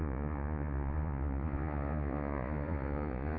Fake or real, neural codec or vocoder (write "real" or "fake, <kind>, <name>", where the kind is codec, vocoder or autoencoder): fake, vocoder, Vocos